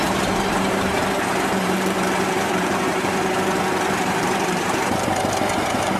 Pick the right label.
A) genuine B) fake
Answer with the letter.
B